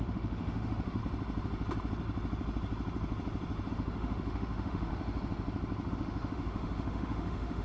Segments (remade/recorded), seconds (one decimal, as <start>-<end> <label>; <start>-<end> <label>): 0.0-1.0 remade; 1.0-3.7 recorded; 3.7-4.9 remade; 4.9-5.9 recorded; 5.9-7.6 remade